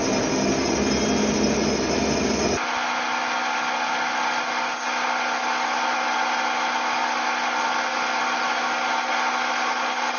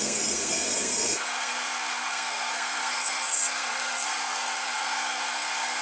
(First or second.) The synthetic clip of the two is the second